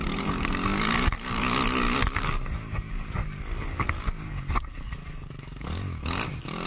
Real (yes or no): no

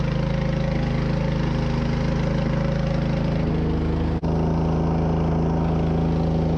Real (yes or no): yes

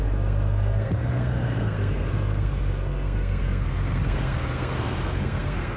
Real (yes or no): no